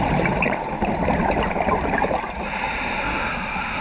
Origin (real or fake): real